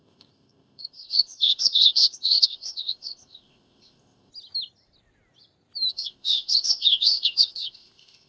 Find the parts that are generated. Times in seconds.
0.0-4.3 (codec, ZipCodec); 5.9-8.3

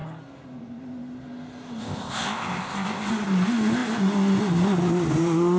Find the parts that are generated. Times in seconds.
1.8-3.1 (codec, ZipCodec)